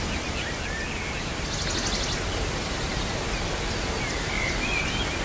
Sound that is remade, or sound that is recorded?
recorded